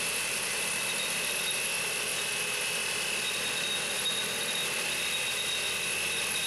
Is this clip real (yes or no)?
yes